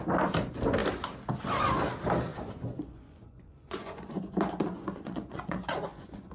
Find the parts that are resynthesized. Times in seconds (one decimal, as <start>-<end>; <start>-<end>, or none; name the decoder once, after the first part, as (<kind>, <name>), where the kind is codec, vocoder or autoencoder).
2.3-6.3 (vocoder, Vocos)